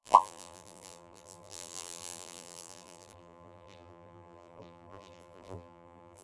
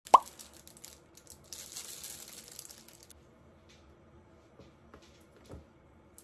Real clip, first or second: second